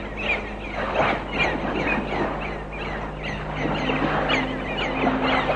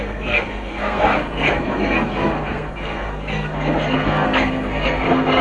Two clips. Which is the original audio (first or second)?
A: first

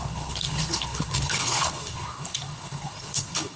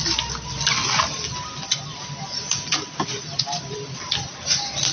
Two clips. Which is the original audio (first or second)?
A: second